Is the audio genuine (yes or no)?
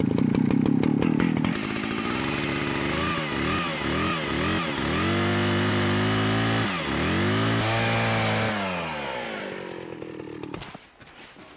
yes